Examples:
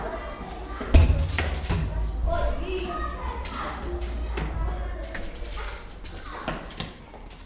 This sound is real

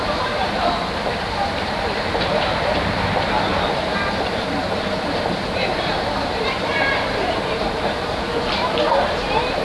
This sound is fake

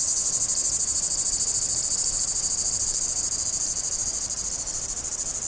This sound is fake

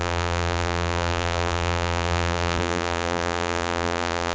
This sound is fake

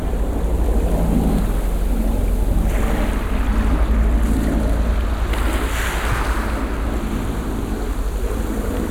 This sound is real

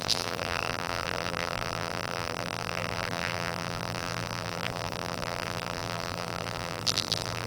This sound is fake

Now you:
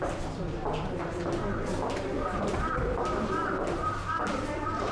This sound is fake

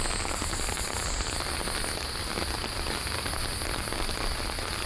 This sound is real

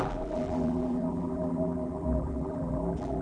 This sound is fake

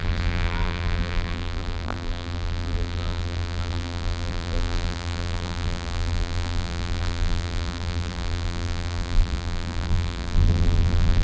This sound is fake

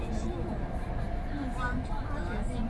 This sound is real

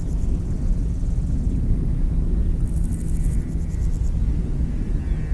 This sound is real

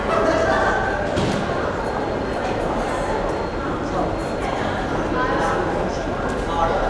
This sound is real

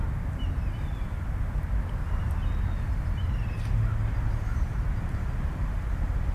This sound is real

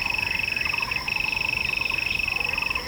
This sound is fake